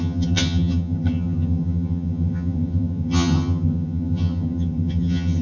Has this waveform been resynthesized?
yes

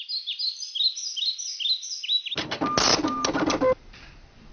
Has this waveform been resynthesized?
no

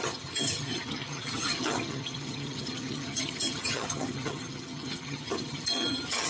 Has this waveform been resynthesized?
yes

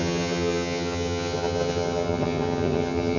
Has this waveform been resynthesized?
yes